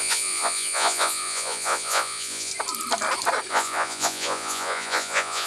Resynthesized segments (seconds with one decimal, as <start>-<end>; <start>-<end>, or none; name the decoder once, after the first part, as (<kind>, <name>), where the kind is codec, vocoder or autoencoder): 0.0-2.5 (vocoder, Vocos); 3.5-5.5